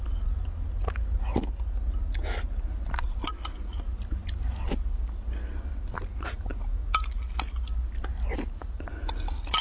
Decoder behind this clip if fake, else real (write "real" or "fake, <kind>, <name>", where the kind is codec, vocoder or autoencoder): real